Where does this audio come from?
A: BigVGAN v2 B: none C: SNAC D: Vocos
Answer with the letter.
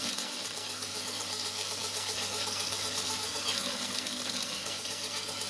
C